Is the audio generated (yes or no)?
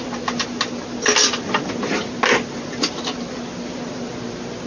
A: no